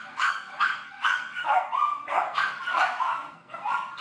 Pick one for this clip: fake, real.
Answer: fake